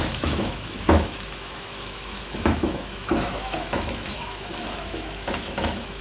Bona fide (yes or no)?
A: no